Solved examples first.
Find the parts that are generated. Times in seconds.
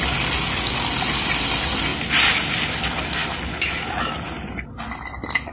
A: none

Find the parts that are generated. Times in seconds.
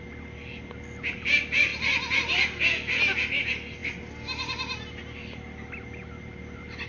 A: none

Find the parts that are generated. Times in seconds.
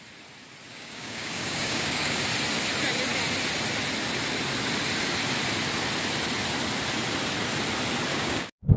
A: 0.7-2.2 (codec, DAC); 8.1-8.8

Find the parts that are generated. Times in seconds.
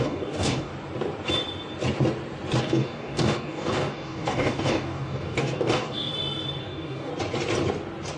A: 0.0-0.7 (codec, DAC); 2.6-6.1; 6.6-7.1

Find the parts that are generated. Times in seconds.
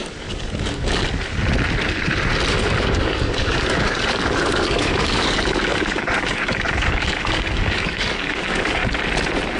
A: 0.0-1.0 (codec, DAC); 2.5-8.8